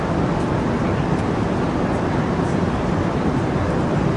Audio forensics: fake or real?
real